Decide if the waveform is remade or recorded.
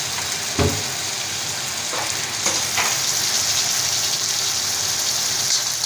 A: recorded